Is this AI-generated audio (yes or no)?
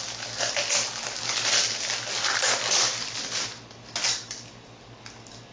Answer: no